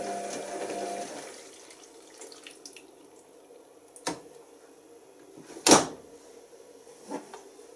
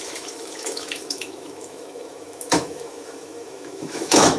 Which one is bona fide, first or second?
first